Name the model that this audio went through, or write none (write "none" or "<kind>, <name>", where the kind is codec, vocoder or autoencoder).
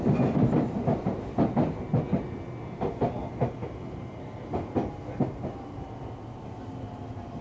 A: none